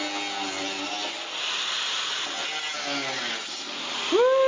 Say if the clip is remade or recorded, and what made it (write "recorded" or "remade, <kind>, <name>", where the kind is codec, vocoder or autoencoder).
recorded